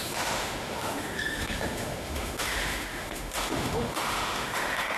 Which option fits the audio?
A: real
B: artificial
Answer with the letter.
B